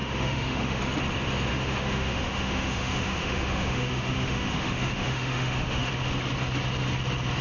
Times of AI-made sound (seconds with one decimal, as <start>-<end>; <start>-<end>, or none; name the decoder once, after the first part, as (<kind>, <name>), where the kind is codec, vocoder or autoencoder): 0.0-0.8 (autoencoder, DAC-VAE); 1.5-5.9